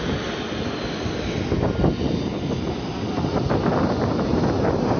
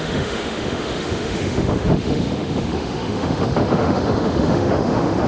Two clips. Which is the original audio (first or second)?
first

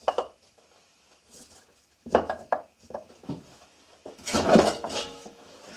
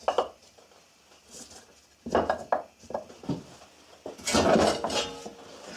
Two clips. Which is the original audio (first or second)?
second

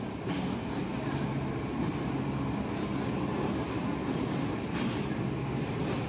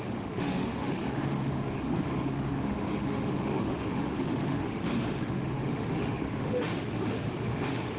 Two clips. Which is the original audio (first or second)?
first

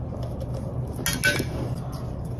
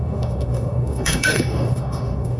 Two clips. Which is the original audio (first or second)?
first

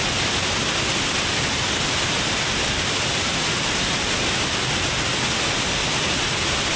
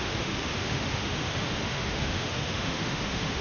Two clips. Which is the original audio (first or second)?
first